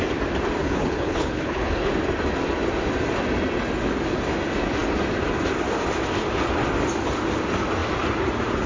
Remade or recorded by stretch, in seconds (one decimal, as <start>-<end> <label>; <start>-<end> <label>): 0.0-0.6 recorded; 0.6-1.9 remade; 1.9-8.7 recorded